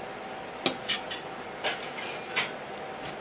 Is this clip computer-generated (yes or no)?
no